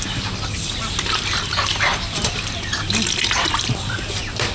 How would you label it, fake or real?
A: fake